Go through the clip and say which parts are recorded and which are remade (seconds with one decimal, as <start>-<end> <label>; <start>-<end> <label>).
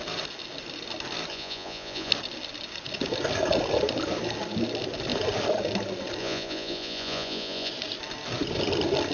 0.0-1.3 recorded; 1.3-2.1 remade; 2.1-6.2 recorded; 6.2-7.7 remade; 7.7-9.1 recorded